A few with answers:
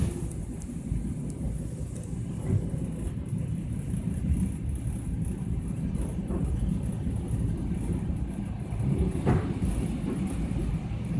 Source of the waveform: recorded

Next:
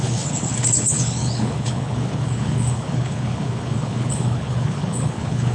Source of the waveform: remade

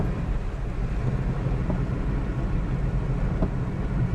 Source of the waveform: recorded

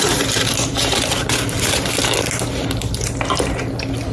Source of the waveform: recorded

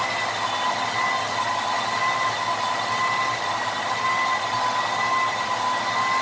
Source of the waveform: recorded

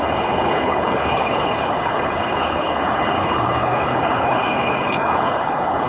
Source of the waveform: remade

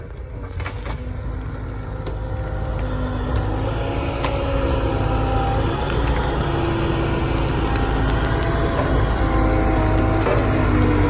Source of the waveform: recorded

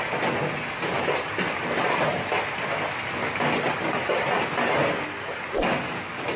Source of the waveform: recorded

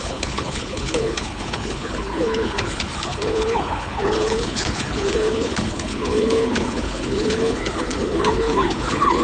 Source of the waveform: remade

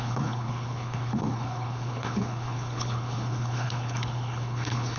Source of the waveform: remade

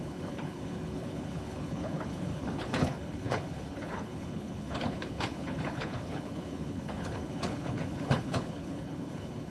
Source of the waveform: remade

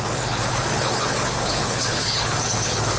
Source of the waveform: remade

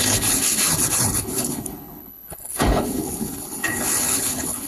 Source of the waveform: remade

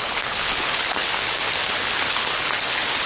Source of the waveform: remade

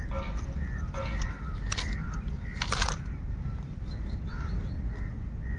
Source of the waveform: recorded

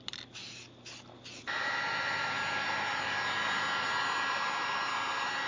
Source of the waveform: recorded